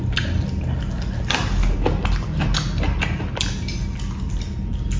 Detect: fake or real real